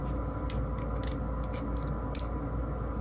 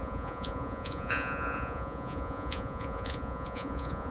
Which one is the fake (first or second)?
second